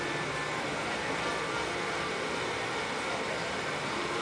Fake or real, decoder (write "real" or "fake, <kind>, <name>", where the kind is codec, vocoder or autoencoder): real